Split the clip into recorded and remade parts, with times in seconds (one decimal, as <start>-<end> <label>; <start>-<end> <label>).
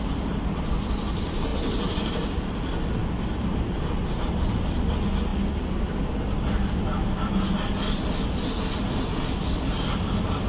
0.0-10.5 recorded